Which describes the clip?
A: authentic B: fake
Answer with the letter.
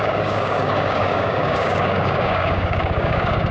B